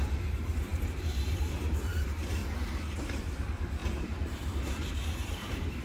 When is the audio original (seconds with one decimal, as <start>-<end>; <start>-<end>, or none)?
2.4-3.0